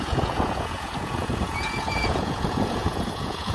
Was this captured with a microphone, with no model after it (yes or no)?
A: no